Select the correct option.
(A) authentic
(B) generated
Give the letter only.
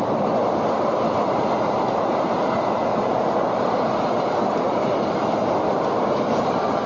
A